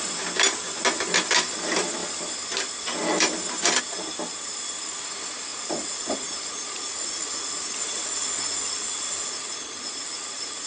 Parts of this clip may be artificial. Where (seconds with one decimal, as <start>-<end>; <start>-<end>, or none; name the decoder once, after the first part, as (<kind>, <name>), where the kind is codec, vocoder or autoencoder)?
5.5-10.7 (vocoder, Vocos)